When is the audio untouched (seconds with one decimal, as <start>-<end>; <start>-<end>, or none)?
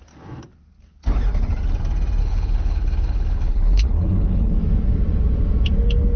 0.0-2.2; 4.5-6.2